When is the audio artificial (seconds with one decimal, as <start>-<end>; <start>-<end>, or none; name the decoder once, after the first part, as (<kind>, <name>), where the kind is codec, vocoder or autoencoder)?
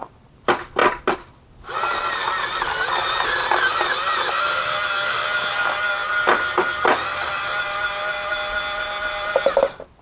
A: none